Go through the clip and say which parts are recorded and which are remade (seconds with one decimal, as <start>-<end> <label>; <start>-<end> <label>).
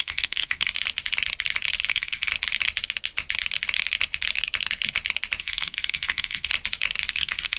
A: 0.0-0.7 remade; 0.7-1.9 recorded; 1.9-2.3 remade; 2.3-5.4 recorded; 5.4-6.5 remade; 6.5-7.1 recorded; 7.1-7.6 remade